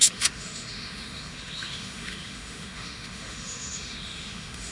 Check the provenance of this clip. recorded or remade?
remade